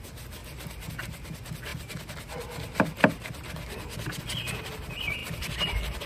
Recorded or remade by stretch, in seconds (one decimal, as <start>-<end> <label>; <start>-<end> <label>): 0.0-6.1 recorded